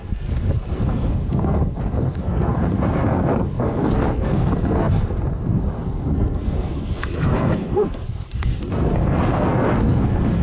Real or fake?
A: fake